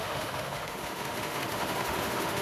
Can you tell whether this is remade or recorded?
remade